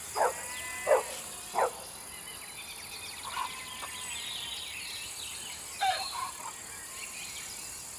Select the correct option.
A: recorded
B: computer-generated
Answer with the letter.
A